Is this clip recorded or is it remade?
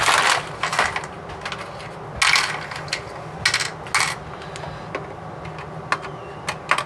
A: recorded